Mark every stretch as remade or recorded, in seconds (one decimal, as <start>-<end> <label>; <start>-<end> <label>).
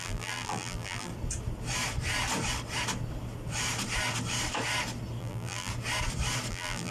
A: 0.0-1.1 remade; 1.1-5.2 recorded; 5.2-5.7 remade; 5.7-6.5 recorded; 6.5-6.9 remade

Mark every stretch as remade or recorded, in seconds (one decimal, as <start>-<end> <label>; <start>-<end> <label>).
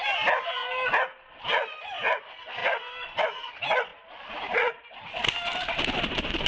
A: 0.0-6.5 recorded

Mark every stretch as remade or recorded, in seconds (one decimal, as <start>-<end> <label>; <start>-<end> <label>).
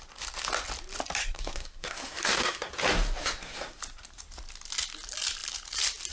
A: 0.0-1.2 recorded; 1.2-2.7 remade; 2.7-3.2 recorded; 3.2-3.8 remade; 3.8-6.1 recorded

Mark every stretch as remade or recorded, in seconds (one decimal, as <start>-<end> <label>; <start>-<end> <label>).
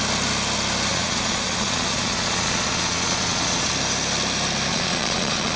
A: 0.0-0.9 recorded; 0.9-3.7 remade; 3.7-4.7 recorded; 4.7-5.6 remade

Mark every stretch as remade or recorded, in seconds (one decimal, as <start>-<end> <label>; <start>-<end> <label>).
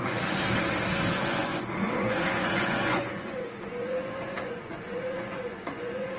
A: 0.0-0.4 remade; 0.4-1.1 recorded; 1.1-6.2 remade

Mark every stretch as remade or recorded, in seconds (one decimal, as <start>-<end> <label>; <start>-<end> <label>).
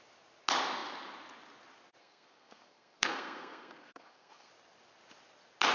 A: 0.0-2.0 recorded; 2.0-4.5 remade; 4.5-5.7 recorded